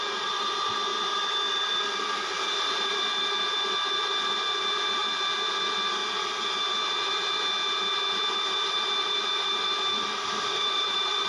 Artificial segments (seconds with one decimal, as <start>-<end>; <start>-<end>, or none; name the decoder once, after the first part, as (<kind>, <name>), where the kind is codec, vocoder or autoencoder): 0.0-5.0 (vocoder, BigVGAN v2); 5.5-6.0; 8.3-11.3